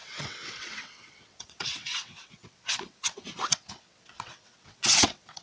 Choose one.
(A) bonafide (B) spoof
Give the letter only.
B